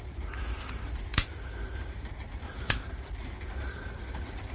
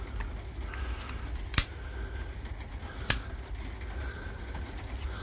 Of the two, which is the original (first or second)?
second